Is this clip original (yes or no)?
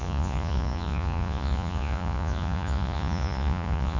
no